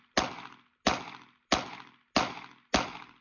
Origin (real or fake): real